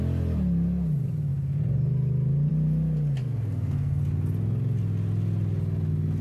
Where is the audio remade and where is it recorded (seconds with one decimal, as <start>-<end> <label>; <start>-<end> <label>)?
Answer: 0.0-3.2 recorded; 3.2-4.0 remade; 4.0-6.2 recorded